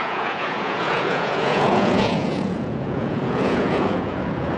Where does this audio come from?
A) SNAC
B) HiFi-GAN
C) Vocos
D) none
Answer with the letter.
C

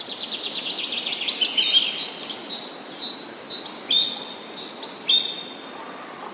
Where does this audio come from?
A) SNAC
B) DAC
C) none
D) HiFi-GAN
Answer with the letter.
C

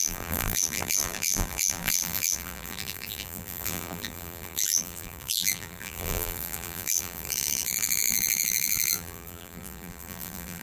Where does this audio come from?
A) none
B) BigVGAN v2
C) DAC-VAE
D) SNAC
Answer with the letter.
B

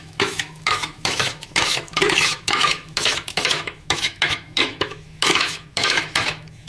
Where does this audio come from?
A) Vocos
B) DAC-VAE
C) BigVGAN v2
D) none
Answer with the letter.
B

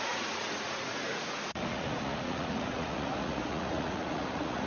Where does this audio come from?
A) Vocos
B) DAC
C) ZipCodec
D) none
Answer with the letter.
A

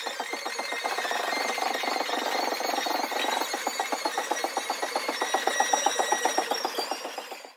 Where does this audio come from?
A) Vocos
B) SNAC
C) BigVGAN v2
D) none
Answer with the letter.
D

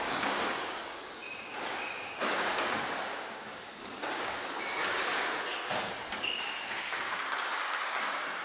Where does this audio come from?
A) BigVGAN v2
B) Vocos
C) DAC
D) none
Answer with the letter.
C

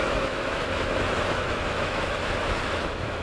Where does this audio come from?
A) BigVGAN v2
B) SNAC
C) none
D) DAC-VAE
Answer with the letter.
D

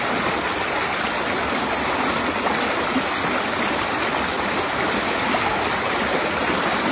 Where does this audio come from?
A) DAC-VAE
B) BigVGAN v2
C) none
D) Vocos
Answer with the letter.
C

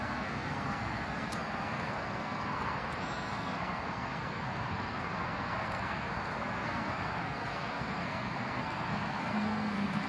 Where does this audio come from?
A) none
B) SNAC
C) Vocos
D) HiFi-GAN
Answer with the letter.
B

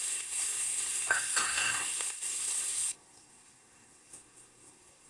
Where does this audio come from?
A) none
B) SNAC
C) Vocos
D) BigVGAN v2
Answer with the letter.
B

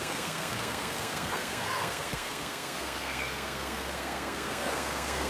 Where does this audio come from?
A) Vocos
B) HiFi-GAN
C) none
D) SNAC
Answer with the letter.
D